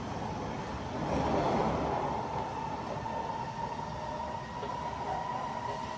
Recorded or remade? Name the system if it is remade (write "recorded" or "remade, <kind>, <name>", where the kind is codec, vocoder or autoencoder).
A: recorded